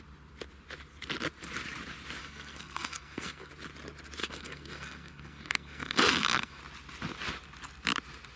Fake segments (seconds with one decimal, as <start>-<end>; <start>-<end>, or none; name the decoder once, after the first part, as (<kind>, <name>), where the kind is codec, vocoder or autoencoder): 2.2-3.5 (codec, SNAC); 4.2-6.6